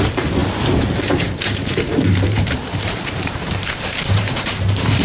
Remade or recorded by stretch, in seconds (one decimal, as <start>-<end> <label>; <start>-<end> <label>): 0.0-5.0 remade